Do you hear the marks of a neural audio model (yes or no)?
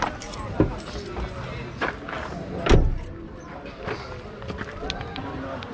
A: no